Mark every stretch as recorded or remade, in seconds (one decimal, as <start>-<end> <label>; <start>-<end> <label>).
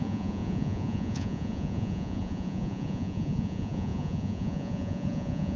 0.0-5.6 remade